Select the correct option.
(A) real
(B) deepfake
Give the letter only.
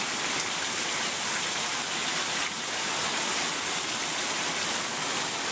A